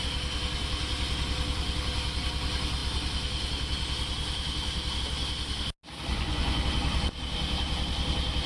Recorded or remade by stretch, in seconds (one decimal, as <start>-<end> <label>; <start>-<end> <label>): 0.0-6.1 recorded; 6.1-6.6 remade; 6.6-8.5 recorded